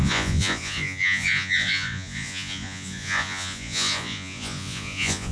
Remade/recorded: remade